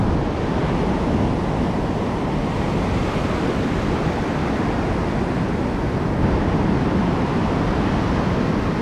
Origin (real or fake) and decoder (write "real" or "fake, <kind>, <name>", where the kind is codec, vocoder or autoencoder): real